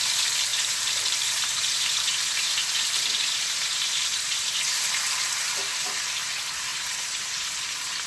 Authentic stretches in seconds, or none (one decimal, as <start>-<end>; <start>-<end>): 0.0-0.5; 4.6-6.7; 7.5-8.1